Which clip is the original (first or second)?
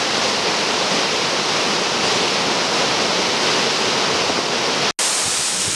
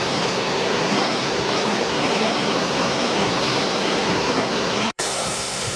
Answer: first